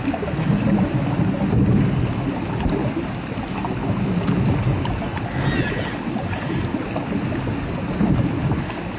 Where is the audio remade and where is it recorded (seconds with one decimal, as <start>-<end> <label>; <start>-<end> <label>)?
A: 0.0-9.0 recorded